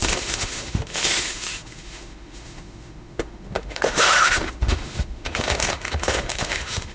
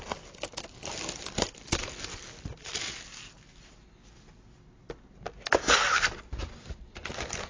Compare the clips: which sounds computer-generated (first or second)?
first